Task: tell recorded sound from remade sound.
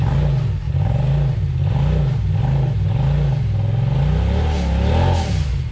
recorded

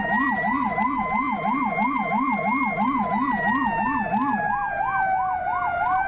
recorded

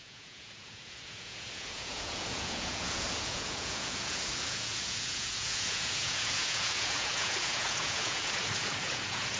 remade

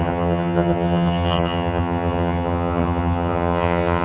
remade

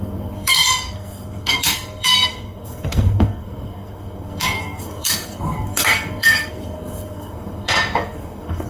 remade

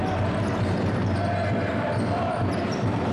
recorded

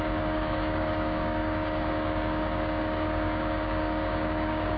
remade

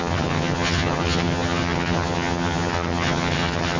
remade